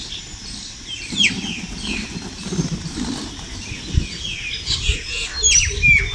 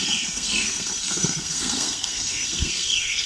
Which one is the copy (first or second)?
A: second